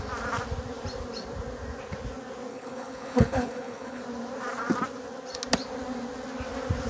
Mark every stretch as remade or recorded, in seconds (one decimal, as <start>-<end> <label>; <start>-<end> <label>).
0.0-2.5 recorded; 2.5-4.0 remade; 4.0-6.9 recorded